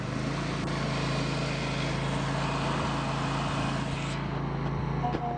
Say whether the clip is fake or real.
real